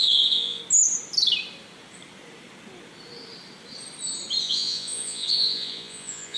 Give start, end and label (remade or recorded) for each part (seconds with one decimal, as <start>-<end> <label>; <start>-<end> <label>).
0.0-0.6 remade; 0.6-4.4 recorded; 4.4-6.4 remade